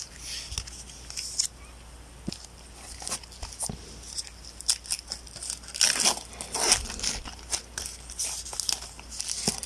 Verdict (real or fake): real